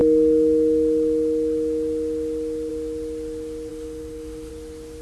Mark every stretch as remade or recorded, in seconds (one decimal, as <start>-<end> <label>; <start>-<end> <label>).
0.0-3.7 recorded; 3.7-4.5 remade; 4.5-5.0 recorded